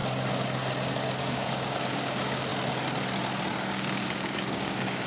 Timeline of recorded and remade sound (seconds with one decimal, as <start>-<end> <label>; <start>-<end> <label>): 0.0-1.2 recorded; 1.2-2.5 remade; 2.5-3.5 recorded; 3.5-5.1 remade